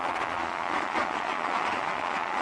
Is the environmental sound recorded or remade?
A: remade